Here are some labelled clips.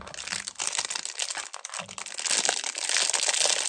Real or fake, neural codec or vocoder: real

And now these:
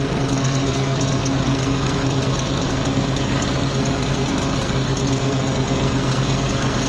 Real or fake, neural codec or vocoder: fake, codec, SNAC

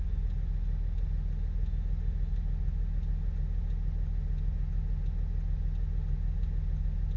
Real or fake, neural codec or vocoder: real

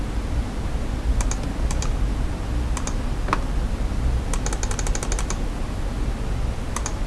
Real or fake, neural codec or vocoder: real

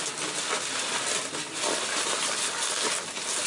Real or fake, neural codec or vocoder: real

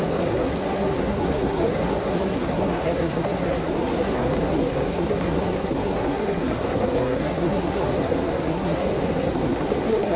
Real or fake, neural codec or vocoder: fake, codec, SNAC